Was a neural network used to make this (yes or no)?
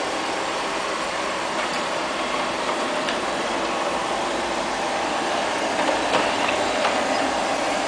yes